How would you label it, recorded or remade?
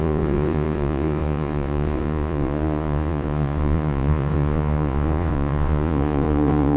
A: remade